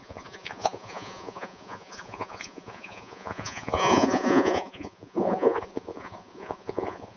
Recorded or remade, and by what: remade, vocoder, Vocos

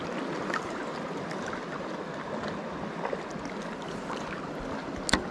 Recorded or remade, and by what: recorded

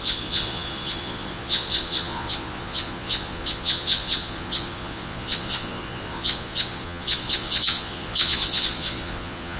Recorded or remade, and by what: remade, vocoder, Vocos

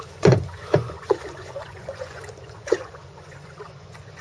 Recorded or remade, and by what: remade, vocoder, Vocos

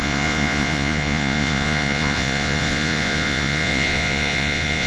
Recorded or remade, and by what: remade, vocoder, Vocos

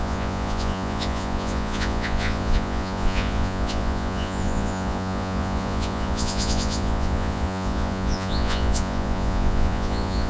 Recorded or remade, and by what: remade, vocoder, Vocos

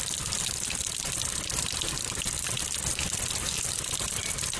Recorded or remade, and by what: recorded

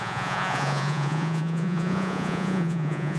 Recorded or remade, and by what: remade, vocoder, Vocos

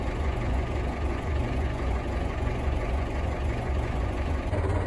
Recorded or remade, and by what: remade, vocoder, Vocos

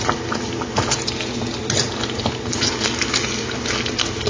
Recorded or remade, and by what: recorded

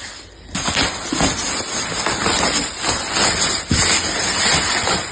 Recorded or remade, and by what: recorded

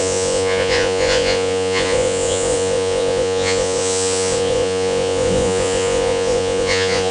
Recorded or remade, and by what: remade, vocoder, Vocos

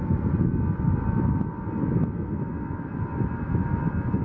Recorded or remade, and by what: recorded